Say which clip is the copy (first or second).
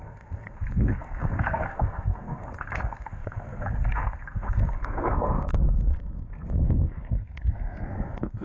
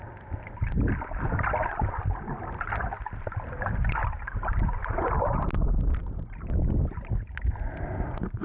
first